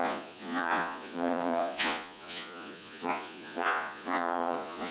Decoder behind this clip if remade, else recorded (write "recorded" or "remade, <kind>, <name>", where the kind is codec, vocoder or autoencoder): remade, vocoder, Vocos